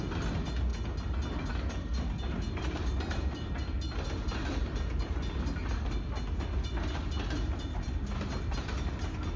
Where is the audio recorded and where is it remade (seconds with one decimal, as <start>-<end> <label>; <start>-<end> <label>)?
0.0-9.4 recorded